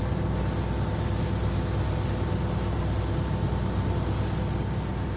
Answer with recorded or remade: recorded